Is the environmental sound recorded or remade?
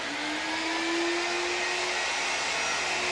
recorded